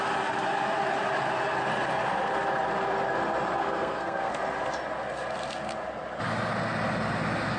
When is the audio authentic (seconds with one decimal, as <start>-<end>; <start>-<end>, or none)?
0.0-3.6; 4.3-7.6